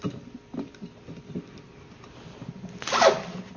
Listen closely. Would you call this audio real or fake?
real